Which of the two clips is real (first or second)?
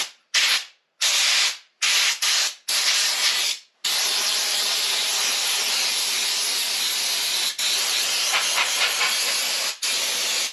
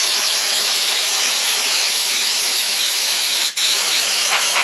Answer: first